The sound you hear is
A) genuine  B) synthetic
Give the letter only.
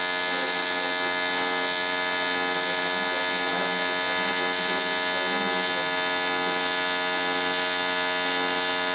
A